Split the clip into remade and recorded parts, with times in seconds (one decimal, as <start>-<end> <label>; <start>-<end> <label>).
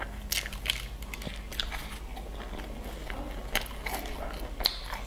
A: 0.0-5.1 recorded